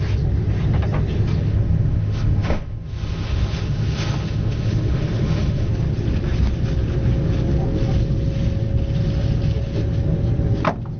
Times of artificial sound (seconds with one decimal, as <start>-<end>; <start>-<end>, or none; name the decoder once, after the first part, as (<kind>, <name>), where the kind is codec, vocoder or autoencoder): 1.5-5.7 (autoencoder, DAC-VAE)